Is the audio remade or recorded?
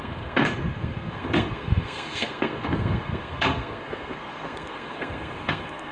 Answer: remade